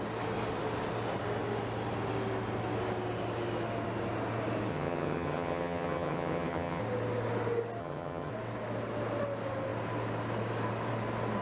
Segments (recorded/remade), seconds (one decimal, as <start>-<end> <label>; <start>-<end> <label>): 0.0-4.7 recorded; 4.7-6.8 remade; 6.8-7.8 recorded; 7.8-8.3 remade; 8.3-11.4 recorded